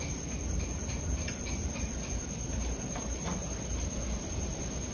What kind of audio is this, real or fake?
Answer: real